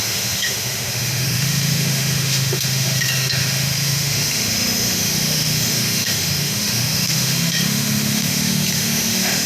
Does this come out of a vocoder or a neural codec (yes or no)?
yes